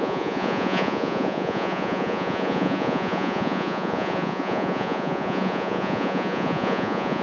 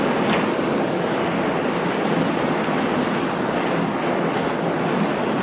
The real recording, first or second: second